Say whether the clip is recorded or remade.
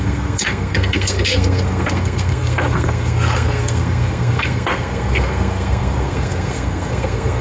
remade